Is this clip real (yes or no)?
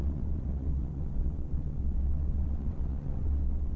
no